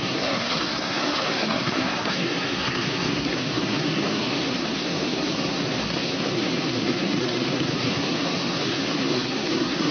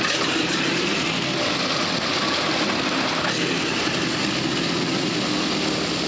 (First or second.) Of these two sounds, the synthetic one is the first